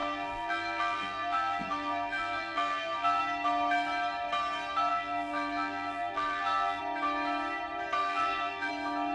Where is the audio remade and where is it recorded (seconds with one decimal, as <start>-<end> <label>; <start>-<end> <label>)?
0.0-3.2 remade; 3.2-4.9 recorded; 4.9-6.8 remade; 6.8-8.0 recorded; 8.0-8.7 remade; 8.7-9.1 recorded